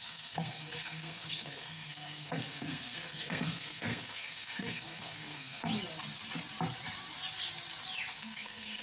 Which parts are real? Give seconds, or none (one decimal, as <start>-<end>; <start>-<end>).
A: 5.7-8.2